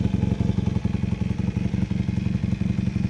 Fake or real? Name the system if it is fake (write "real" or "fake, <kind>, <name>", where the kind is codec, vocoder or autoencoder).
real